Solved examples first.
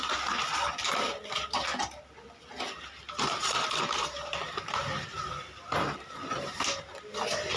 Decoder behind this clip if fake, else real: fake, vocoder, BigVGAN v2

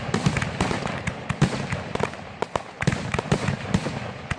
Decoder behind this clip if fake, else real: real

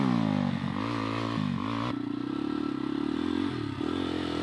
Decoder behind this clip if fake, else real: real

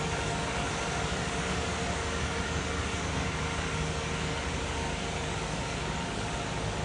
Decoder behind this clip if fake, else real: fake, codec, DAC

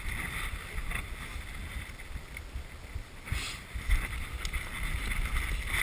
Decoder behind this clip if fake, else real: real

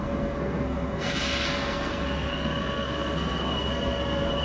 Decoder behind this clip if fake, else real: fake, codec, SNAC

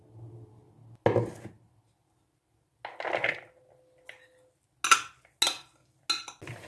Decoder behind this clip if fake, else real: real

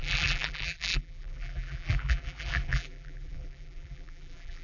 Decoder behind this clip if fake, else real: fake, vocoder, BigVGAN v2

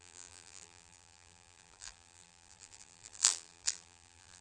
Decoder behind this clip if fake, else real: fake, vocoder, BigVGAN v2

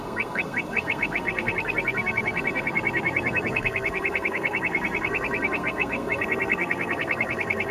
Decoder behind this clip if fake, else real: fake, codec, SNAC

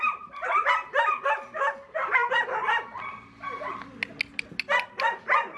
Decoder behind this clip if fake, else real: real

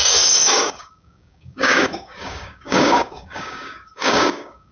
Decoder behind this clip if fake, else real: fake, codec, DAC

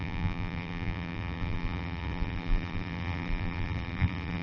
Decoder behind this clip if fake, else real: fake, vocoder, BigVGAN v2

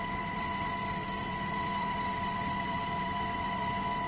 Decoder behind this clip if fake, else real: fake, vocoder, BigVGAN v2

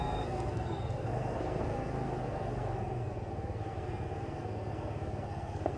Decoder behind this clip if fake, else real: fake, codec, SNAC